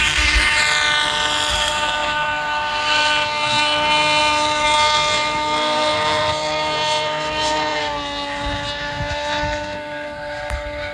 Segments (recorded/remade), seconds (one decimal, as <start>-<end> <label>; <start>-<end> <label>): 0.0-0.6 remade; 0.6-1.5 recorded; 1.5-10.9 remade